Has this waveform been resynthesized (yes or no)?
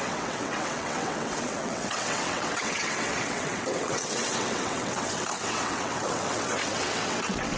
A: yes